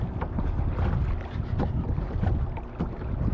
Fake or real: real